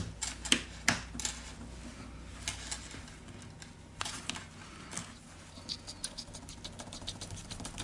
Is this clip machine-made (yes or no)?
no